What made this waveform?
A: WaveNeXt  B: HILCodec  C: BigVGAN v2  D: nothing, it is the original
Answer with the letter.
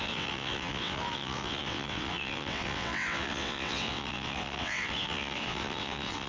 A